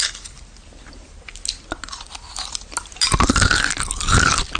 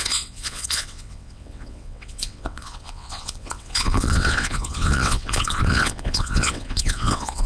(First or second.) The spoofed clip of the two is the second